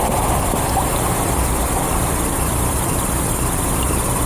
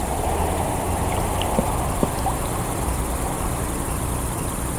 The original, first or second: second